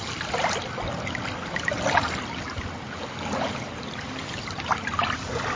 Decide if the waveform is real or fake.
real